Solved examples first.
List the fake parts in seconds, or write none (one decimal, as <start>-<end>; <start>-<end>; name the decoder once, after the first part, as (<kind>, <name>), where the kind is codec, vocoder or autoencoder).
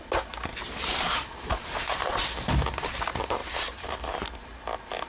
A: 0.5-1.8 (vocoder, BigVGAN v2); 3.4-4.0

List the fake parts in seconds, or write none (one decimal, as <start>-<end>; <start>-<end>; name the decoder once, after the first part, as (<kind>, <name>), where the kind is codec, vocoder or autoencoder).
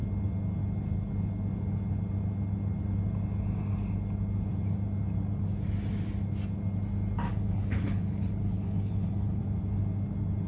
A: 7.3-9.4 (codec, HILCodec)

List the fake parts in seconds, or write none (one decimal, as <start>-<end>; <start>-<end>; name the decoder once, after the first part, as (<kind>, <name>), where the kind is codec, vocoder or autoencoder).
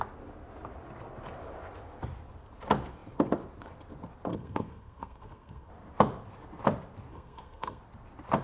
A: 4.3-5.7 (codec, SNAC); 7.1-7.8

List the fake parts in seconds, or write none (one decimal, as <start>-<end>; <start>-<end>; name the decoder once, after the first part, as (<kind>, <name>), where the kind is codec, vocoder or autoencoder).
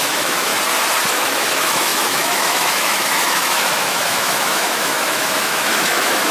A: 0.0-0.5 (autoencoder, DAC-VAE); 1.1-6.3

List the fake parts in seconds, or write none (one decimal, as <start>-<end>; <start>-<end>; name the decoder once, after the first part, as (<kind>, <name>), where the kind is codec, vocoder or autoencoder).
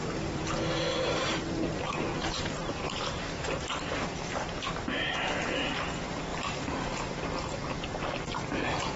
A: 0.0-0.5 (vocoder, BigVGAN v2); 0.9-5.2; 6.3-7.1